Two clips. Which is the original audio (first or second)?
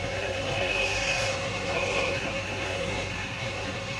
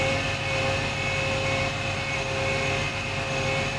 second